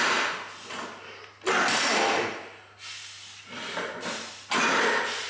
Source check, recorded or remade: recorded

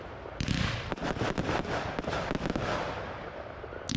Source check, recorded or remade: recorded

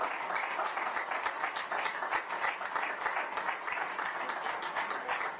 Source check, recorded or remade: recorded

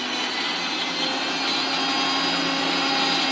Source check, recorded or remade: recorded